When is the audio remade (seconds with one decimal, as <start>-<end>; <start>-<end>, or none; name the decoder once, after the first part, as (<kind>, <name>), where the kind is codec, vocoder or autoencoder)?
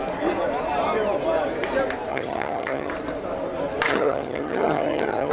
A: 2.1-2.9 (vocoder, HiFi-GAN); 3.9-5.3